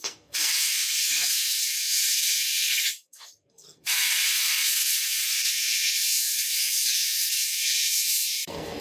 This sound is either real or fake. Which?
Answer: fake